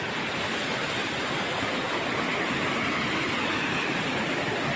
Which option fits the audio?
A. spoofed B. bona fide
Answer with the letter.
B